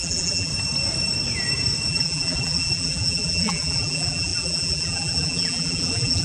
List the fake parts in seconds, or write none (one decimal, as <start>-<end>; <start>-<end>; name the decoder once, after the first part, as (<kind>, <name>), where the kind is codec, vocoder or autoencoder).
0.0-0.5 (vocoder, BigVGAN v2); 1.9-6.2